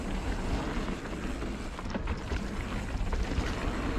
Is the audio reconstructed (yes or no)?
no